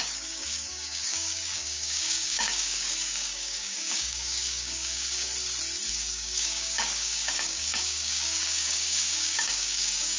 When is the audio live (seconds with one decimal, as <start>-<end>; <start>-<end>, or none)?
5.3-5.9